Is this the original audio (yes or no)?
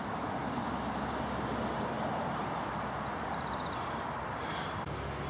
yes